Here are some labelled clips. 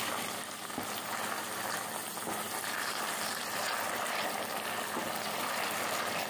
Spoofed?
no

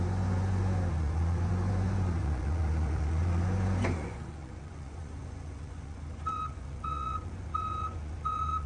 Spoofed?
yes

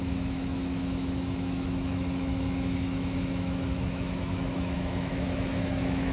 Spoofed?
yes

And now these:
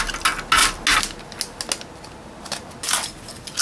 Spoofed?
no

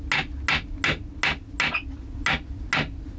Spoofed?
no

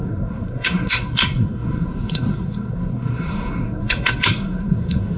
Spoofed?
yes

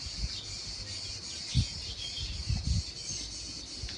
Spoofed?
no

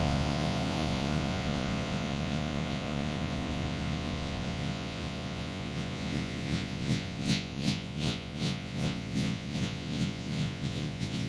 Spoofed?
yes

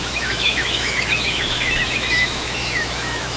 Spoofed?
yes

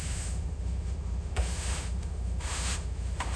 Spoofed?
yes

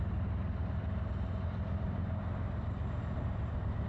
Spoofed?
yes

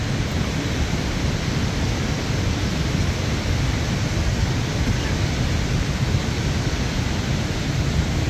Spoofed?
no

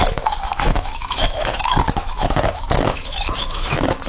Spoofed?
yes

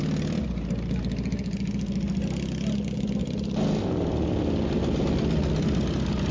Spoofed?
no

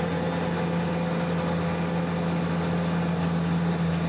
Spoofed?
no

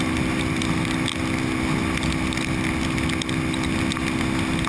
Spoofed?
no